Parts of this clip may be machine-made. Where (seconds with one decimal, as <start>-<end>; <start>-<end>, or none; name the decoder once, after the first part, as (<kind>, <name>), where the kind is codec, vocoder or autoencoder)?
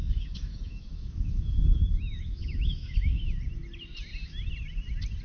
0.0-3.1 (autoencoder, DAC-VAE)